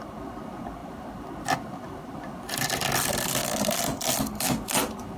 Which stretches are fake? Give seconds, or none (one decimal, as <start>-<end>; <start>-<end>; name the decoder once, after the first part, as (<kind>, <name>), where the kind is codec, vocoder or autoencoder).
none